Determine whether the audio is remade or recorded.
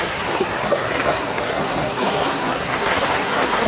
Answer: remade